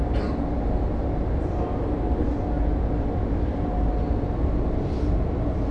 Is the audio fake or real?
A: real